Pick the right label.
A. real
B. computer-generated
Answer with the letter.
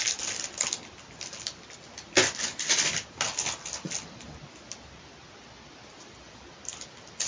A